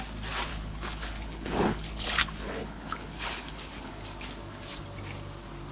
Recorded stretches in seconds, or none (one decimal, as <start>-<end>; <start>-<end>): 0.0-0.5; 3.9-5.7